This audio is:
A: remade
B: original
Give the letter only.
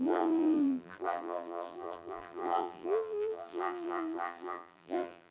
A